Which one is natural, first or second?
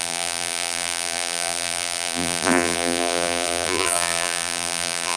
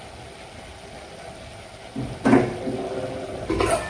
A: second